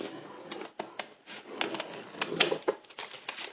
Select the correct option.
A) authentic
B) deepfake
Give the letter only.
A